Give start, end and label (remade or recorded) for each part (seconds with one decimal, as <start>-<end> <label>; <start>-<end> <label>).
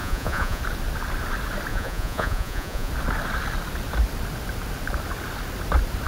0.0-0.6 remade; 0.6-1.7 recorded; 1.7-2.9 remade; 2.9-6.1 recorded